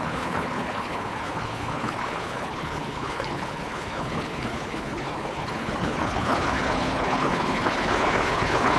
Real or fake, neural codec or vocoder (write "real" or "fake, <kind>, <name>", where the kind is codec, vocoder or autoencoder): fake, codec, HILCodec